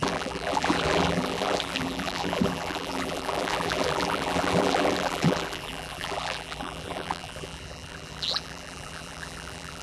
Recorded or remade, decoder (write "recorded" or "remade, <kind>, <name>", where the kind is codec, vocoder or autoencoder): remade, vocoder, BigVGAN v2